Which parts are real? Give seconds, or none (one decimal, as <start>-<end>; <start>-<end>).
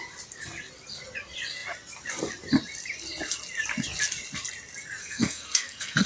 0.0-5.0